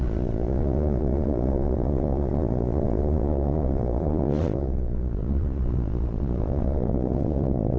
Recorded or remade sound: remade